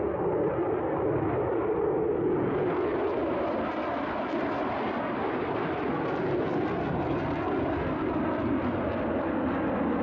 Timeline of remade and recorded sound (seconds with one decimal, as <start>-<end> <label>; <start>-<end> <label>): 0.0-10.0 recorded